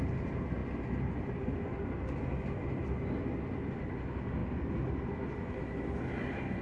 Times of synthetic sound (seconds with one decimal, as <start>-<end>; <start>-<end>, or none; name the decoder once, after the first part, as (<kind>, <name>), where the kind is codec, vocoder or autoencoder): none

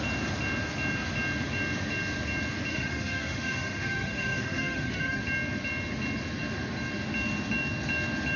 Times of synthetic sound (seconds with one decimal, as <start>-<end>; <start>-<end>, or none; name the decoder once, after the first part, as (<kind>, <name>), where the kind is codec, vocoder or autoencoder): 2.7-5.2 (autoencoder, DAC-VAE)

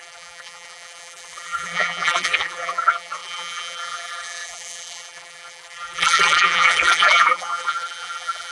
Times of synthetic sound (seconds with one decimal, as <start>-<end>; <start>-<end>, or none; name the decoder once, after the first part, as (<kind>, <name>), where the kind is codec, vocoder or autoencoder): 0.0-8.5 (vocoder, BigVGAN v2)

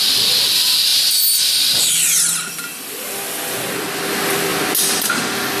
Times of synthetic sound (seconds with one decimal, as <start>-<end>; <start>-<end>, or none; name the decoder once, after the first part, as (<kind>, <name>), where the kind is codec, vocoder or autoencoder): none

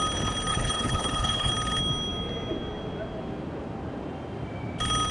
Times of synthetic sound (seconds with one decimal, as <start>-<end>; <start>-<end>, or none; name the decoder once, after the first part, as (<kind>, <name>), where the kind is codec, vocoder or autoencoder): 0.5-1.5 (codec, HILCodec)